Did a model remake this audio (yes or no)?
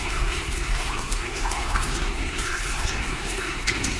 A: yes